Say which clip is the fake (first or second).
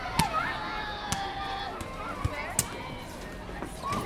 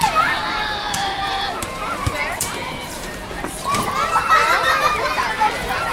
second